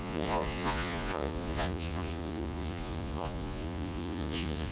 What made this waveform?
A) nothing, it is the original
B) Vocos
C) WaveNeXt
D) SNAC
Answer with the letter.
B